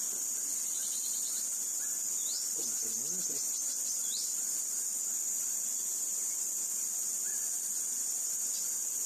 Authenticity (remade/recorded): recorded